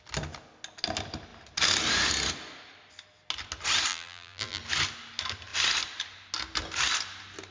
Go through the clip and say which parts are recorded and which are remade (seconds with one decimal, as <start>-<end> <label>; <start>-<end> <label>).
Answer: 0.0-3.9 recorded; 3.9-4.6 remade; 4.6-7.5 recorded